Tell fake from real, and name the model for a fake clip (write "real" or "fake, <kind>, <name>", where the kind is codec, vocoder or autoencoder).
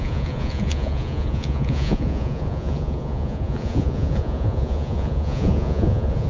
fake, vocoder, Vocos